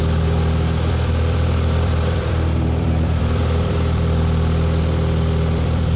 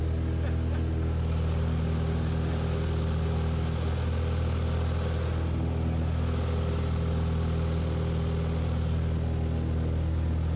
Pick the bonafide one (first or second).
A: second